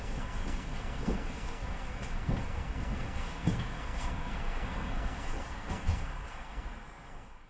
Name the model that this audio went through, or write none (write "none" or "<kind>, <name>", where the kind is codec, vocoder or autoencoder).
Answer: codec, SNAC